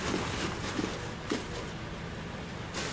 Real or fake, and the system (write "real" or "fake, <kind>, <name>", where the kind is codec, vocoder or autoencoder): real